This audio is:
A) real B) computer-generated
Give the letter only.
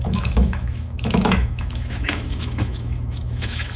B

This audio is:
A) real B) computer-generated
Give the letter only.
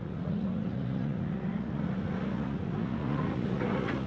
B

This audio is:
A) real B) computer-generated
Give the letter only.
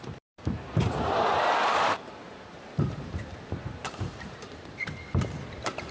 B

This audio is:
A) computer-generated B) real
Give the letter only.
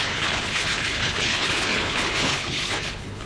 A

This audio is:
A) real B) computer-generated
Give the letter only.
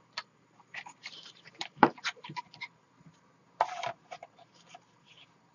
B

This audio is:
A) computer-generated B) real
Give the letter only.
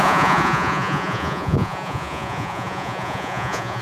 A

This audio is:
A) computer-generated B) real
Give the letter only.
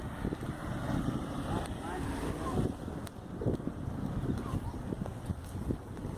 B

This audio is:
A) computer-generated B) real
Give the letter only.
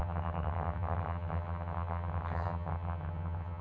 A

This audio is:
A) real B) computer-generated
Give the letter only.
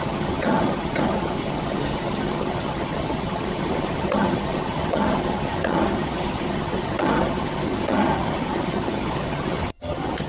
B